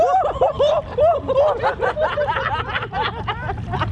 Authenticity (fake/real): real